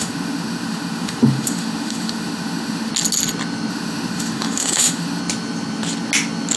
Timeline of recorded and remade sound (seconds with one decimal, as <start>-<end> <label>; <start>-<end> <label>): 0.0-2.9 remade; 2.9-3.7 recorded; 3.7-5.2 remade; 5.2-6.6 recorded